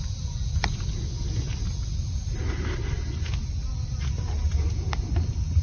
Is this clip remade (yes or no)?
no